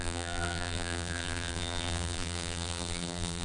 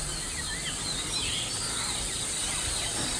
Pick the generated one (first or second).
first